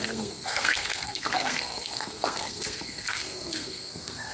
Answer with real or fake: fake